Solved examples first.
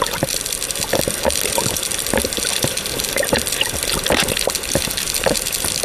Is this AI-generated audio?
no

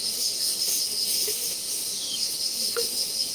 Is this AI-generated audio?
yes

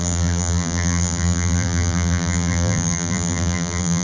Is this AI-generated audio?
yes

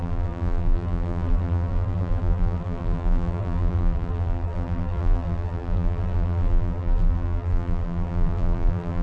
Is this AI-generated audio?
yes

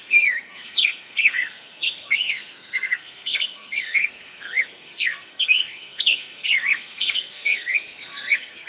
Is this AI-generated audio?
yes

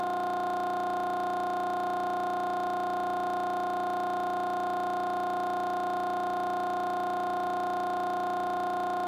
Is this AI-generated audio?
no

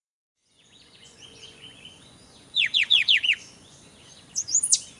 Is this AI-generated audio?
yes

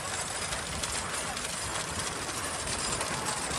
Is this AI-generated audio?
no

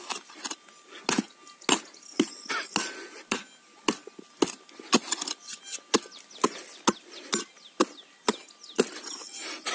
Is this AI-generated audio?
no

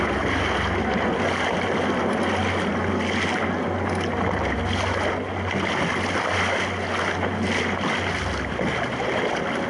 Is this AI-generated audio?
no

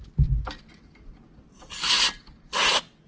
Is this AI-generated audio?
no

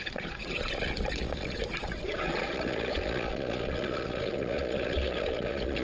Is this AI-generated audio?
yes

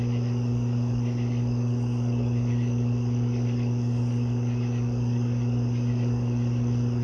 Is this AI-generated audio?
yes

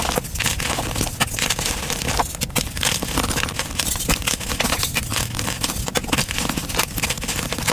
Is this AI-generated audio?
no